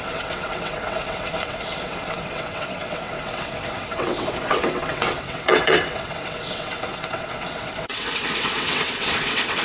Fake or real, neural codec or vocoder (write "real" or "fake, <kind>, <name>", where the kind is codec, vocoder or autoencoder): fake, vocoder, WaveNeXt